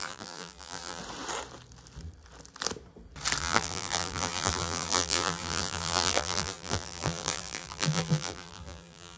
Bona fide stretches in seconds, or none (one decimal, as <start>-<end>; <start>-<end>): 1.0-3.4